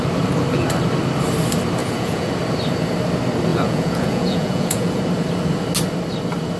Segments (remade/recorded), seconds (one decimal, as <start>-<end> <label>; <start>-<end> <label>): 0.0-1.8 recorded; 1.8-2.3 remade; 2.3-3.5 recorded; 3.5-5.0 remade; 5.0-6.6 recorded